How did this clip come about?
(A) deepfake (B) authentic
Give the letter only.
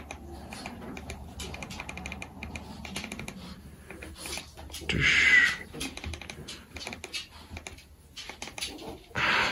B